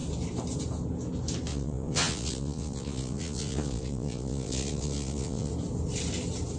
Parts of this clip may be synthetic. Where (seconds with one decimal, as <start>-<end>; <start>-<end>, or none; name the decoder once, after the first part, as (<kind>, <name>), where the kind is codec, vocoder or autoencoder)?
1.5-5.5 (vocoder, Vocos)